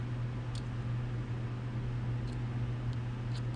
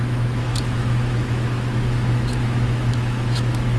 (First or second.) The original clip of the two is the first